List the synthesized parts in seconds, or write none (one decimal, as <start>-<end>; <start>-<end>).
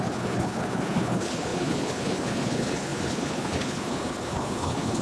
0.0-5.0